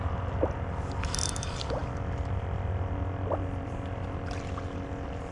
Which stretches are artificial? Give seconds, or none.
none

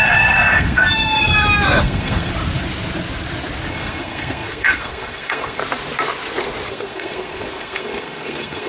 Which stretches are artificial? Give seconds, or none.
0.0-1.3 (codec, SNAC); 1.8-2.3; 3.7-5.6; 6.7-8.7

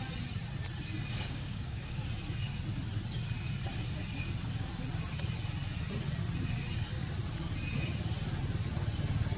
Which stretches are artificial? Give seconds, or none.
1.1-2.0 (codec, DAC)